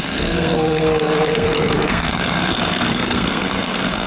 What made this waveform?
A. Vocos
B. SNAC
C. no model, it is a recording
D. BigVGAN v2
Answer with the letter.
B